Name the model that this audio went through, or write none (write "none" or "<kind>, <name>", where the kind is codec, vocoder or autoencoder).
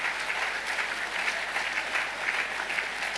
none